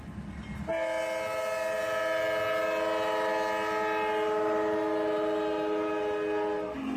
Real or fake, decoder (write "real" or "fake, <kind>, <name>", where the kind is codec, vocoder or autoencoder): real